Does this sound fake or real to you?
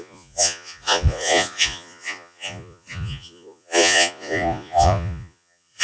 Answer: fake